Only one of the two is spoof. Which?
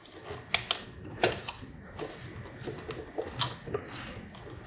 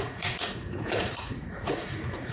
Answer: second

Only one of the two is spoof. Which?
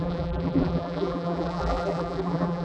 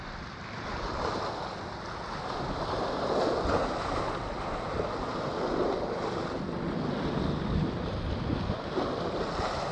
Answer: first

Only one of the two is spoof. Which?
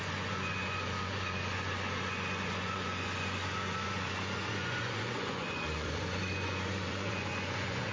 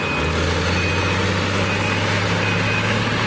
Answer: first